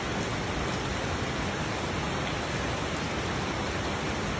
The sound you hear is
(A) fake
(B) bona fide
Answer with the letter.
B